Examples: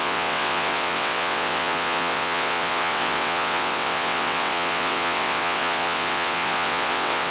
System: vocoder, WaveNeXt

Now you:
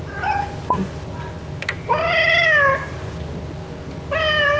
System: none